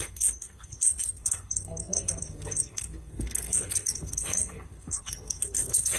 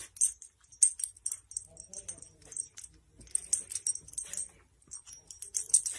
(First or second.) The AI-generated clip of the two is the first